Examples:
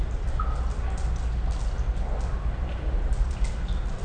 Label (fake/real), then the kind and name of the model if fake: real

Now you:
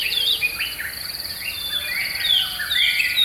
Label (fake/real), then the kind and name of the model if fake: fake, vocoder, BigVGAN v2